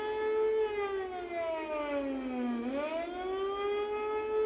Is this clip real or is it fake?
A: real